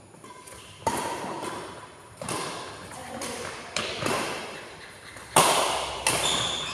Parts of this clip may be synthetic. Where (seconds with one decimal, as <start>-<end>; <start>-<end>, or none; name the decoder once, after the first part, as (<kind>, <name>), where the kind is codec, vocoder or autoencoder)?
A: 0.0-6.7 (vocoder, BigVGAN v2)